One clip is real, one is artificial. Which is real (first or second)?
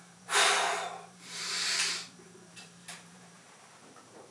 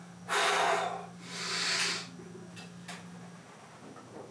second